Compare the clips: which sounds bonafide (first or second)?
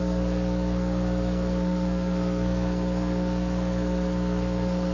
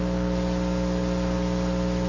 second